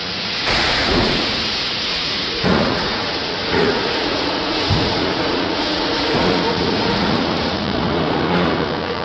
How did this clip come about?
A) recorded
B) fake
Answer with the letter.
B